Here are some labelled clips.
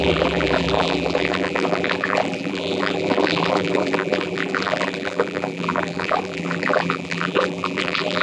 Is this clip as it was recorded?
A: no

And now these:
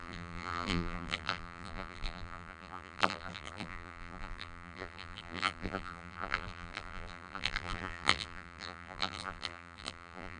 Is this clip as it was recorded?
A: no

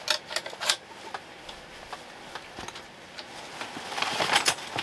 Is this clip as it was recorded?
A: yes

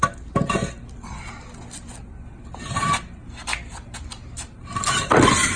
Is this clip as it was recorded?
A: yes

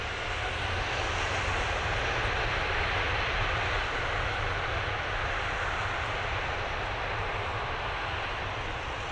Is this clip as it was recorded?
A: yes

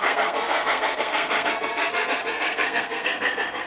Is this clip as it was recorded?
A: no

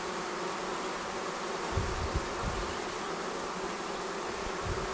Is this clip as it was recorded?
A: yes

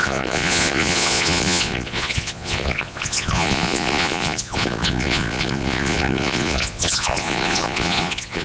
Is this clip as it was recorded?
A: no